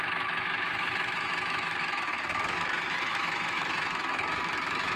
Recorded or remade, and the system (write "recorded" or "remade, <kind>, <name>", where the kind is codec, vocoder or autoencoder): remade, autoencoder, DAC-VAE